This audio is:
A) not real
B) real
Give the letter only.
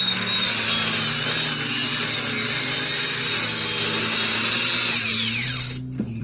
B